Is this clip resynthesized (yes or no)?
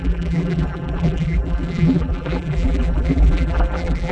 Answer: yes